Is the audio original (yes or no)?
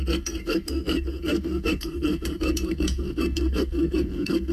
no